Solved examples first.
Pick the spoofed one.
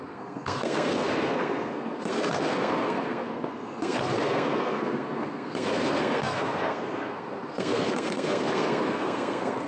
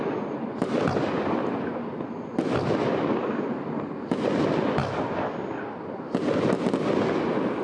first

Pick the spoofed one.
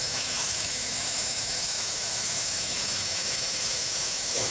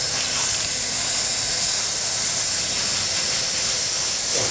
first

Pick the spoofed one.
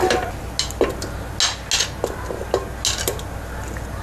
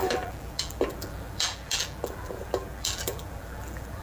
second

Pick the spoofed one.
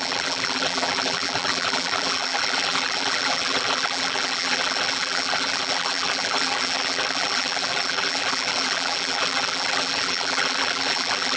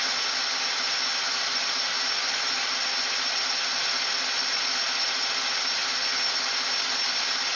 first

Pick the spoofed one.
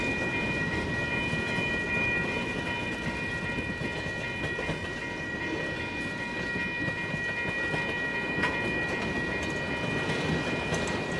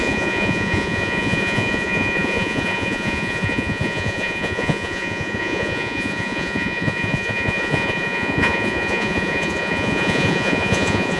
second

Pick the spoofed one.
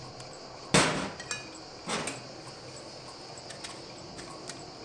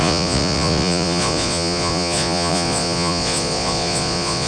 second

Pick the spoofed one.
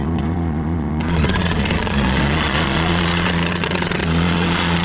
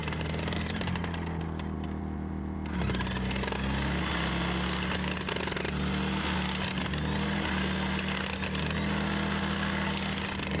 first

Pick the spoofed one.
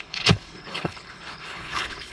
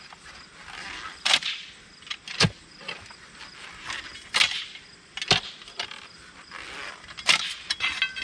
first